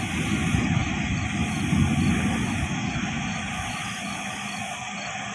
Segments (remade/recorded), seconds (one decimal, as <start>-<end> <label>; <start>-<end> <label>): 0.0-5.3 recorded